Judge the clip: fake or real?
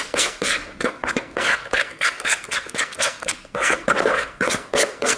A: fake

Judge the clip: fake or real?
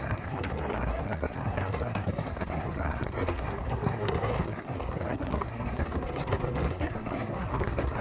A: fake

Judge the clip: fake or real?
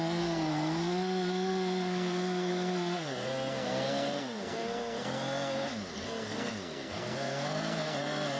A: fake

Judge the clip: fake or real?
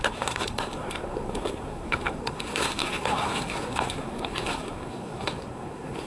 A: fake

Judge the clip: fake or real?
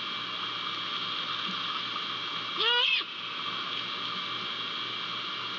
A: real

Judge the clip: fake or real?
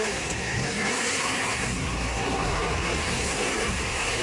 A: fake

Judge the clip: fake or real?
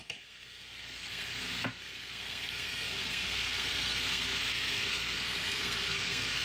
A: fake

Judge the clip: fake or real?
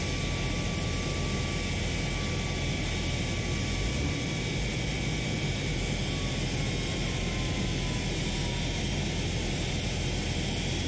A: real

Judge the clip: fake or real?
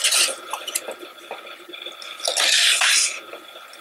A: real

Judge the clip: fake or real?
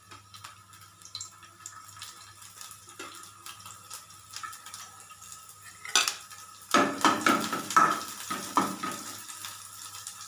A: real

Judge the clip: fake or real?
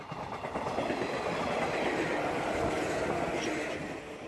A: real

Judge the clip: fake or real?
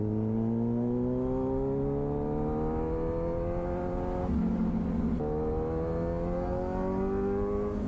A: real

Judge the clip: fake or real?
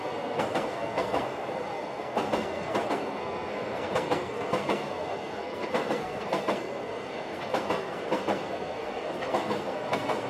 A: fake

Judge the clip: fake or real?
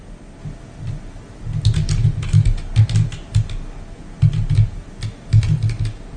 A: real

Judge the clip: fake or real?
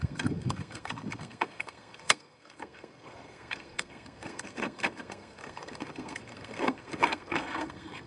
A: fake